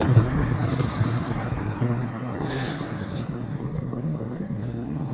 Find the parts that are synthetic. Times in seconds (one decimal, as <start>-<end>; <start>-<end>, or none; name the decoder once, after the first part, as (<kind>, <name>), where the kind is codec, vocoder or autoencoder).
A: 0.0-5.1 (codec, SNAC)